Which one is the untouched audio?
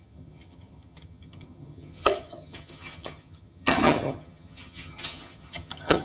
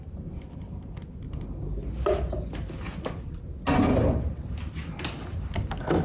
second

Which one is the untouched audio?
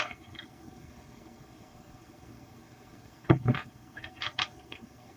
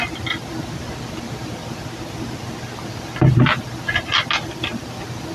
second